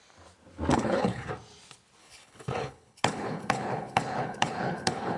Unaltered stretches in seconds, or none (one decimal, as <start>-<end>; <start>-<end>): 0.0-0.7; 1.3-2.0